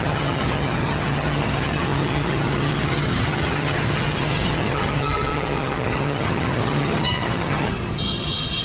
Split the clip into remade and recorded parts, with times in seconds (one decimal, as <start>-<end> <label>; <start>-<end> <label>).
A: 0.0-8.6 remade